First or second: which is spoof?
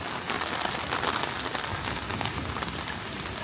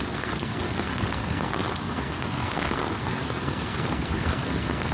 second